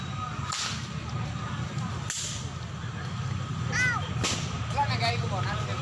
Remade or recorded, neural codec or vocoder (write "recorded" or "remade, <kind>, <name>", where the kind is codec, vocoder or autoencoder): recorded